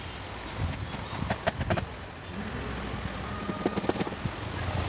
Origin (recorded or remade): recorded